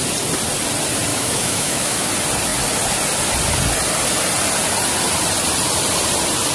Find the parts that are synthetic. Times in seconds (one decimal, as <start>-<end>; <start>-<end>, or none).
1.1-2.1